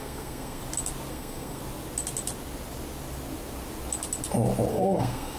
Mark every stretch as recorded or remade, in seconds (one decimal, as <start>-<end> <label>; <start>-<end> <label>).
0.0-0.6 remade; 0.6-1.1 recorded; 1.1-1.6 remade; 1.6-4.7 recorded; 4.7-5.4 remade